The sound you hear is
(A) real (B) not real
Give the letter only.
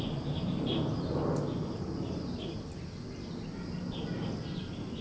A